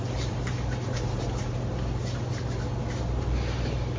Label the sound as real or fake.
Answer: real